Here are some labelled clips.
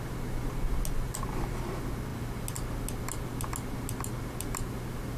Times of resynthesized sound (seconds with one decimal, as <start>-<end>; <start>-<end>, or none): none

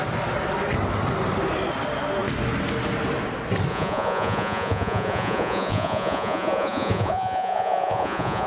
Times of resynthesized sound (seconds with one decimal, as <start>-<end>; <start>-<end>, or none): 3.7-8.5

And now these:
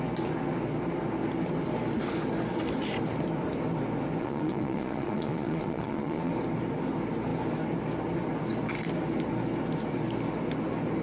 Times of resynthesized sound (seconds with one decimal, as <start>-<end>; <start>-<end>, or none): 4.2-6.3